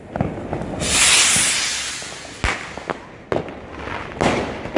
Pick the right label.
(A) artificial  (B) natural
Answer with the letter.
B